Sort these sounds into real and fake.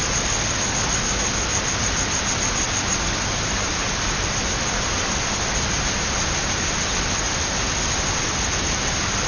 real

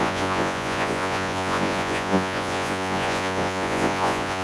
fake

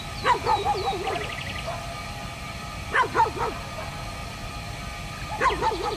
real